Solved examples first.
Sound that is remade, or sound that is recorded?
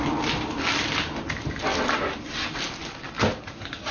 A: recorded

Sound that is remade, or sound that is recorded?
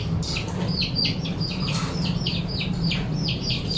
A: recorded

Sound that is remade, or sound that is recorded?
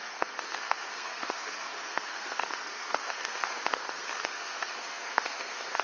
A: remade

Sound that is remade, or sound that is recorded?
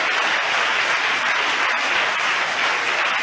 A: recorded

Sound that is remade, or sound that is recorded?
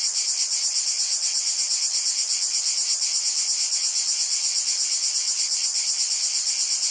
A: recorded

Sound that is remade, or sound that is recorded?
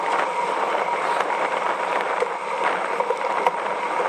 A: recorded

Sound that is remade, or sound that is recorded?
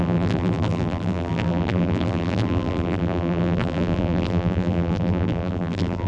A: remade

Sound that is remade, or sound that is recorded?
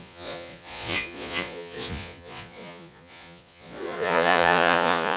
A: remade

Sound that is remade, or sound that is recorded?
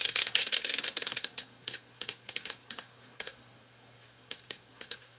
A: remade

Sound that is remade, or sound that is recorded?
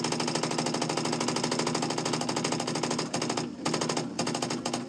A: recorded